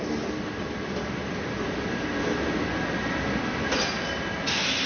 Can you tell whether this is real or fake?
real